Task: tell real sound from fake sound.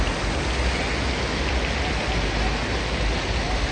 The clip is real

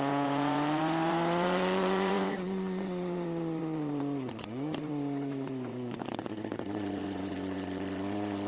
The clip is fake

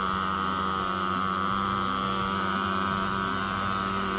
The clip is real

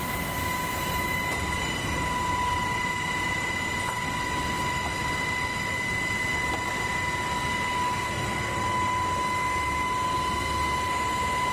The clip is real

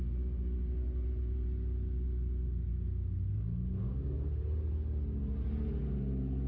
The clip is real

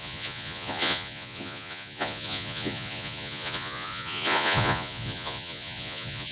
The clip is fake